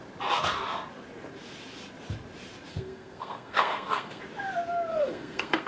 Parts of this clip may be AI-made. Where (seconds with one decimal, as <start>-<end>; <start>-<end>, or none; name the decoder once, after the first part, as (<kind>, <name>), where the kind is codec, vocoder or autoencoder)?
2.7-4.2 (codec, SNAC); 4.9-5.7